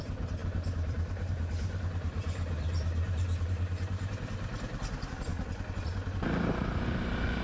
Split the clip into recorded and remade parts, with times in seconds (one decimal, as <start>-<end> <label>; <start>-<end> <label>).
0.0-5.3 remade; 5.3-6.2 recorded; 6.2-7.4 remade